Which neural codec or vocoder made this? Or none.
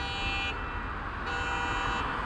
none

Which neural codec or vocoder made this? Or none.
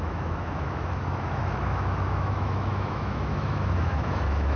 autoencoder, DAC-VAE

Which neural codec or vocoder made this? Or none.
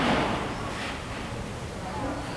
none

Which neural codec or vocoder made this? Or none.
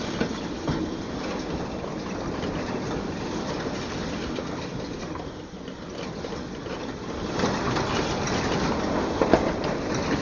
none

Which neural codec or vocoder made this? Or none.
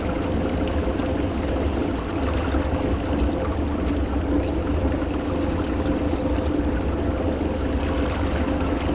none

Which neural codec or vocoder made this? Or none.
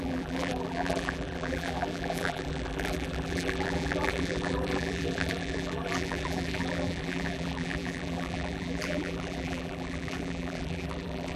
vocoder, BigVGAN v2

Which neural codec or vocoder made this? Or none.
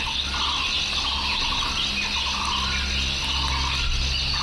none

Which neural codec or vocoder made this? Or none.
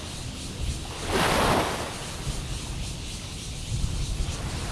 none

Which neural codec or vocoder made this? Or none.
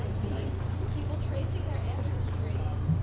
none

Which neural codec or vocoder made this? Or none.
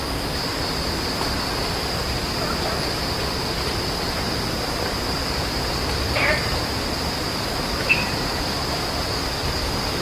vocoder, BigVGAN v2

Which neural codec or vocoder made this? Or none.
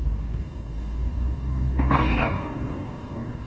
codec, DAC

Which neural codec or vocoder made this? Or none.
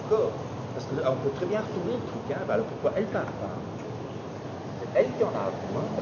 none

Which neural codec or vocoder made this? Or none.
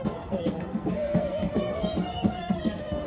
codec, SNAC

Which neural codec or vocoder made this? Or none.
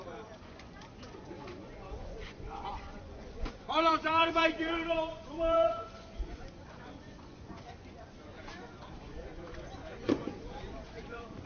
vocoder, Vocos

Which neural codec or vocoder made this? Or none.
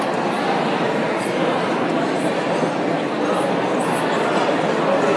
none